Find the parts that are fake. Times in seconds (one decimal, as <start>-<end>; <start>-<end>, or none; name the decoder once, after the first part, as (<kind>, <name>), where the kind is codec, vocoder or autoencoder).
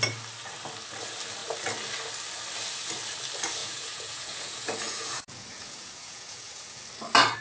3.6-6.8 (vocoder, Vocos)